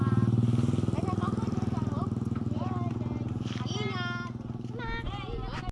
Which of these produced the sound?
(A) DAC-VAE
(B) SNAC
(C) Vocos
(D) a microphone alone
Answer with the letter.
D